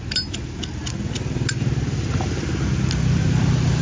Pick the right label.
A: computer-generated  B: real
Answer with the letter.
B